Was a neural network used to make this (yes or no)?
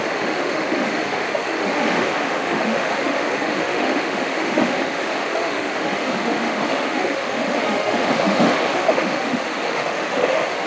yes